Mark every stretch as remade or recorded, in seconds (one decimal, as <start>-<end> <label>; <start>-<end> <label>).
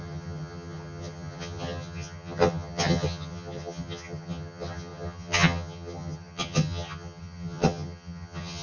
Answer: 0.0-8.6 remade